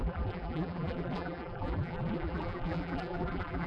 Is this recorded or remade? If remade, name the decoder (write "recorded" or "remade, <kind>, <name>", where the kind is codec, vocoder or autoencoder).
remade, vocoder, BigVGAN v2